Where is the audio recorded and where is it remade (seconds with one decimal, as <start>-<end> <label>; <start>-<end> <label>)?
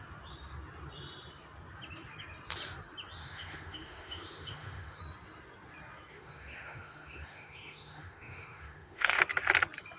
0.0-3.2 recorded; 3.2-5.0 remade; 5.0-6.1 recorded; 6.1-9.2 remade; 9.2-10.0 recorded